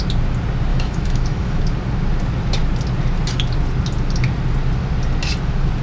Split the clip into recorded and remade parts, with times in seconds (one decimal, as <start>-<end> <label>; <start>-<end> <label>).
0.0-0.7 recorded; 0.7-1.6 remade; 1.6-5.8 recorded